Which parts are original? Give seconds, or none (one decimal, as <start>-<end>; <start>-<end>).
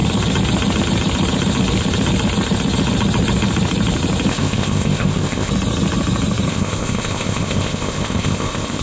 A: 0.0-4.3; 5.5-6.5